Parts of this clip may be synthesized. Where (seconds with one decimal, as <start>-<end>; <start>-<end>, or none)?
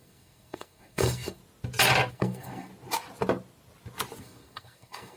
0.0-1.4; 2.1-2.7; 4.2-5.2